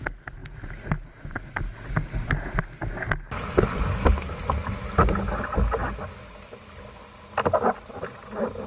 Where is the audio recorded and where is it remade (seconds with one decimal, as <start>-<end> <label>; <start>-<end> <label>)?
0.0-8.7 recorded